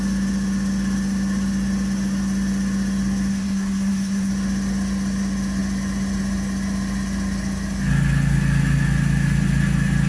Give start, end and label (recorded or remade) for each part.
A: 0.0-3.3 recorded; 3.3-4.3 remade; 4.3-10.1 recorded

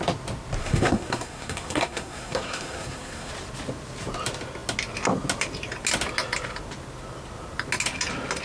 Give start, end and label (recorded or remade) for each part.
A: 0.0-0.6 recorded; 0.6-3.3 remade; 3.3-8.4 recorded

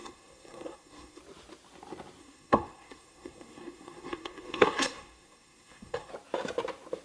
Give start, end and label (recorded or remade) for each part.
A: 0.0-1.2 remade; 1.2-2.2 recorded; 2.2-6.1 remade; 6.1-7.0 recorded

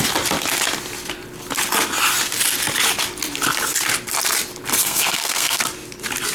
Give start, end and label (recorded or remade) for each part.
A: 0.0-4.8 recorded; 4.8-5.6 remade; 5.6-6.3 recorded